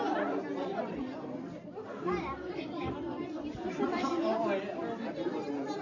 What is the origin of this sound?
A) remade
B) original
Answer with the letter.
B